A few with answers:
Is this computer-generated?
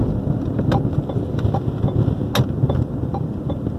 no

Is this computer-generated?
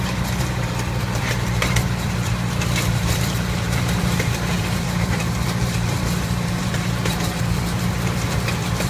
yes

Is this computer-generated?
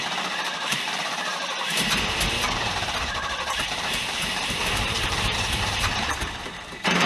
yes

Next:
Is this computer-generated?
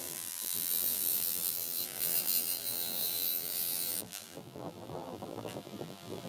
yes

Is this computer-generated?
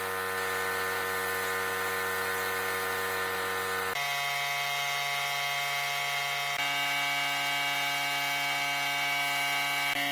no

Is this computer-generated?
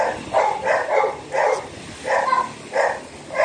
no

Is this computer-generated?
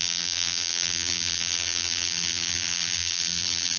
yes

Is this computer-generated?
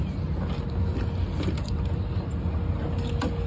no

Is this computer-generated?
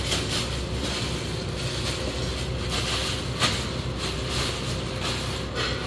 no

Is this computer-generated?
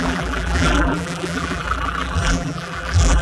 yes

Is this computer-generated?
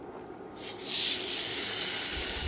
no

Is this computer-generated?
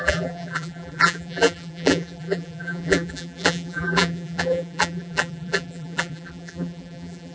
yes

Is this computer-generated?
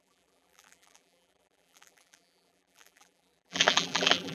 yes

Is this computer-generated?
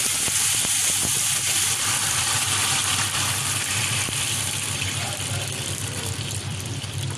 yes